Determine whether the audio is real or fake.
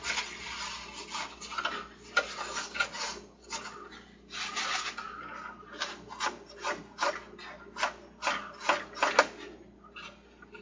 real